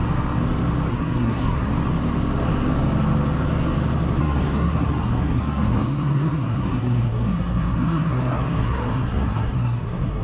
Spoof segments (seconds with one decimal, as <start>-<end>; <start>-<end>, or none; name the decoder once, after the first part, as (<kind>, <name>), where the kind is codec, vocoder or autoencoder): 0.9-1.7 (codec, SNAC); 4.2-10.2